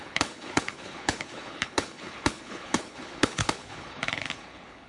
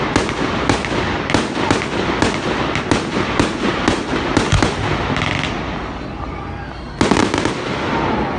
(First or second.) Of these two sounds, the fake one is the first